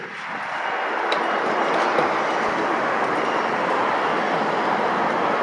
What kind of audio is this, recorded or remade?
recorded